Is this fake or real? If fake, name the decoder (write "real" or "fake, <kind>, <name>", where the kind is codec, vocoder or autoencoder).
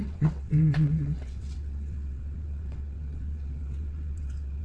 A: fake, vocoder, WaveNeXt